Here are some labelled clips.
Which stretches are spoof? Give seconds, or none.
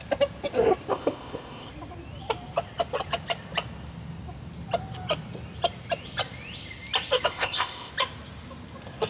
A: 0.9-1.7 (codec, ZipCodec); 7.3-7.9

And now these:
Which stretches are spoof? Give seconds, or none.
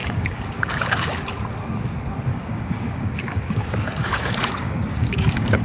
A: 0.0-1.4 (codec, DAC); 2.3-5.6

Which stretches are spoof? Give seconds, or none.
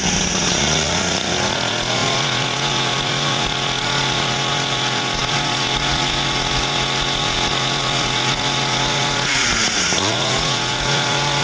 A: 0.0-11.4 (vocoder, Vocos)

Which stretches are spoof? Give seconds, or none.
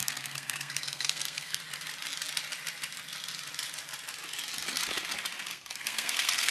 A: 0.0-1.6 (codec, SNAC); 5.5-6.5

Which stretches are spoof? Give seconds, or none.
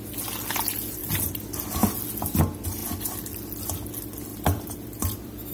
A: 4.3-5.5 (vocoder, BigVGAN v2)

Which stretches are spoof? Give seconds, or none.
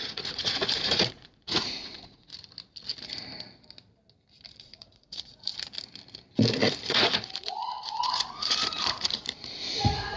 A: 0.0-2.3 (vocoder, Vocos); 4.5-5.5; 6.9-10.2